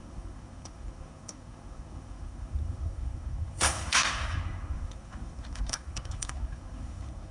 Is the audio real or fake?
fake